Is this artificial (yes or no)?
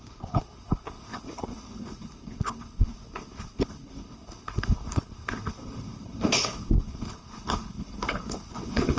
yes